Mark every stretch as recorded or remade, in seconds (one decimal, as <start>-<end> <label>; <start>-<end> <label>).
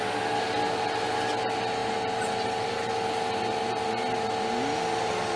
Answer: 0.0-5.4 recorded